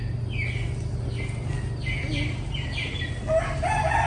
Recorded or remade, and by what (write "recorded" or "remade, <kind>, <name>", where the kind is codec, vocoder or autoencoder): recorded